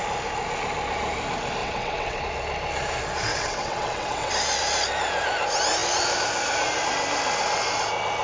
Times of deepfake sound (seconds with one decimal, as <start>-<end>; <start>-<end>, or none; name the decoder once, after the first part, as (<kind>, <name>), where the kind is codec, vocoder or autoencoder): 1.6-2.2 (vocoder, WaveNeXt); 3.3-4.3